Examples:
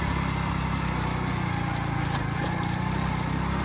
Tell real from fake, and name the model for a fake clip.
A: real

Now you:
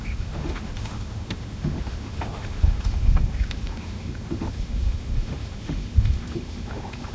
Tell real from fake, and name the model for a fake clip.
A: fake, autoencoder, DAC-VAE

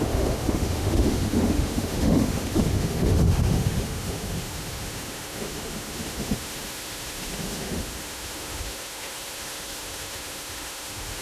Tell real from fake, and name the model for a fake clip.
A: fake, autoencoder, DAC-VAE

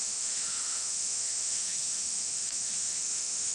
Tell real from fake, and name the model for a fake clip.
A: fake, autoencoder, DAC-VAE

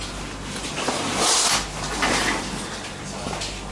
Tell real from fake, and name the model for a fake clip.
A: real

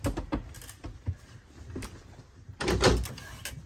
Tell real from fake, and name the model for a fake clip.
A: real